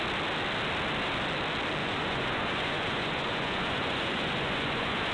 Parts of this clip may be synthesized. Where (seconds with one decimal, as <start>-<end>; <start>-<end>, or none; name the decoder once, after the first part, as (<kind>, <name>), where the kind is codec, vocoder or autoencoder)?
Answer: 1.8-5.1 (vocoder, Vocos)